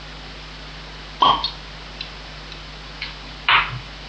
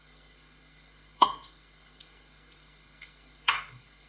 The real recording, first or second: first